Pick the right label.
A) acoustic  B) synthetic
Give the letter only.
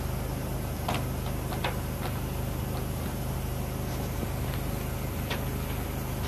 A